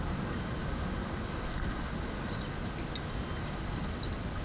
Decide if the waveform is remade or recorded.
recorded